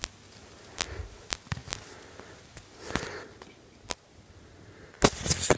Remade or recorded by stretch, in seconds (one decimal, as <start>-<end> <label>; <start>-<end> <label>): 0.0-5.6 recorded